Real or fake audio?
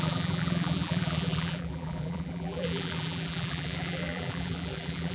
fake